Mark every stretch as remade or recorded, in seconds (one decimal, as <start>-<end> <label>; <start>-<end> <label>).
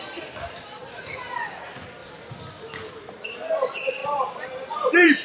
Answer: 0.0-0.8 remade; 0.8-1.6 recorded; 1.6-2.0 remade; 2.0-3.5 recorded; 3.5-4.0 remade; 4.0-4.7 recorded; 4.7-5.2 remade